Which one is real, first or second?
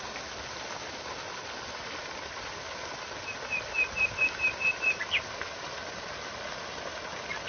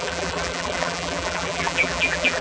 first